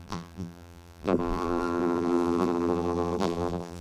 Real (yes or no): no